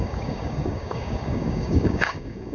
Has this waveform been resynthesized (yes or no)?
yes